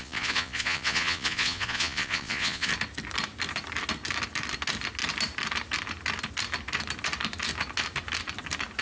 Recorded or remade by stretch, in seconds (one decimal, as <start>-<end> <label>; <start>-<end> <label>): 0.0-2.7 remade; 2.7-8.8 recorded